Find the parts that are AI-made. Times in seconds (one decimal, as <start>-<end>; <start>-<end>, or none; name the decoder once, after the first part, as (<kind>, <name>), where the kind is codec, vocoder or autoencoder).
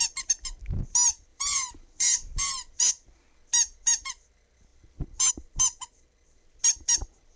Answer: 1.3-2.9 (vocoder, BigVGAN v2)